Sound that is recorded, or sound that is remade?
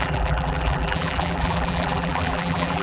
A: remade